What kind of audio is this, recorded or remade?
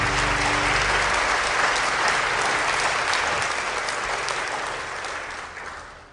recorded